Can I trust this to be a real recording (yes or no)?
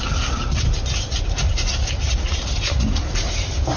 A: yes